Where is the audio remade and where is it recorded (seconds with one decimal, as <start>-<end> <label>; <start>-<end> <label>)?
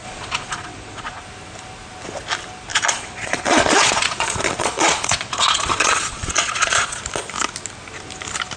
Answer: 0.0-1.2 remade; 1.2-2.7 recorded; 2.7-7.0 remade; 7.0-8.6 recorded